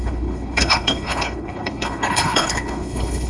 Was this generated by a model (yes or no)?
yes